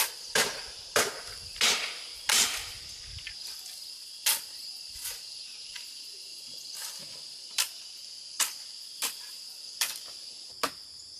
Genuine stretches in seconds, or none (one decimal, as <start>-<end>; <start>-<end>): 0.0-11.2